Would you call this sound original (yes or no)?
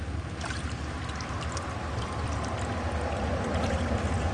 yes